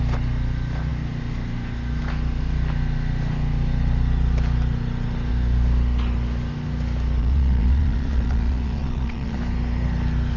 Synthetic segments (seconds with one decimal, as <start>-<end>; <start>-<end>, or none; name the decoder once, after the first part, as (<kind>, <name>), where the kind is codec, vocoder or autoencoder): 7.2-9.4 (vocoder, Vocos)